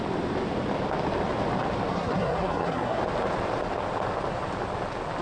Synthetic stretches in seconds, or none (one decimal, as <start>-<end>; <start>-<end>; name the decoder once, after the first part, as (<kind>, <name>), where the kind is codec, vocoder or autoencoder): 1.9-3.0 (codec, SNAC)